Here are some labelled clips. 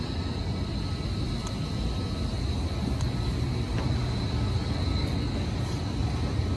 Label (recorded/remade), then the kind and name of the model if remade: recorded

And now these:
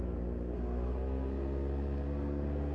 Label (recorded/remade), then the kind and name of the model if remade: remade, codec, SNAC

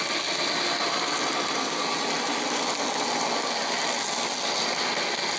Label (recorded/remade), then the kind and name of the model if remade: recorded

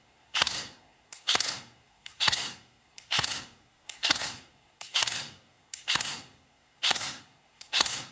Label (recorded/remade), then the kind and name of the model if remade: remade, codec, SNAC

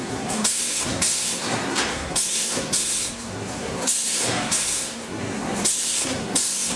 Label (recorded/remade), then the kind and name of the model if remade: remade, codec, SNAC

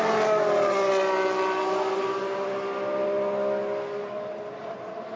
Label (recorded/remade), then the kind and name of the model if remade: recorded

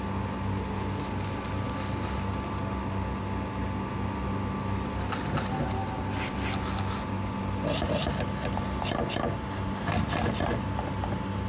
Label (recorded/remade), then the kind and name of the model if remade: recorded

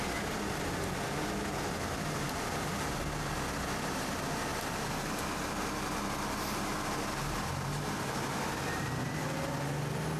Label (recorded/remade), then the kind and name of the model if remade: recorded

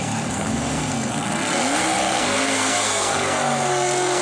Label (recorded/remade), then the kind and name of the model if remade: remade, codec, SNAC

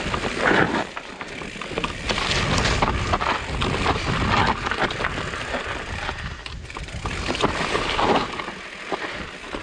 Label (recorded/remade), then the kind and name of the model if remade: recorded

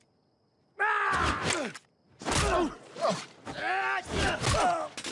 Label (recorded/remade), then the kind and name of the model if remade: recorded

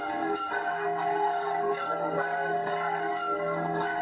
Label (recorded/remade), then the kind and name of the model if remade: remade, codec, SNAC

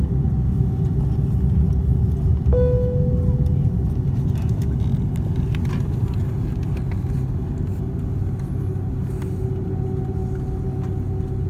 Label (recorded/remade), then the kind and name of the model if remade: recorded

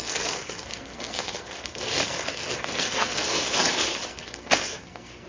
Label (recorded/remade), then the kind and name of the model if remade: remade, codec, SNAC